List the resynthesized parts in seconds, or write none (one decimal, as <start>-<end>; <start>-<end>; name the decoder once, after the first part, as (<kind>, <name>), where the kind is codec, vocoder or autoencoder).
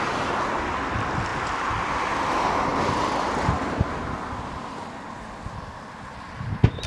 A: 1.3-2.3 (vocoder, BigVGAN v2)